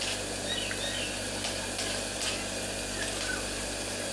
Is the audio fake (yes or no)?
no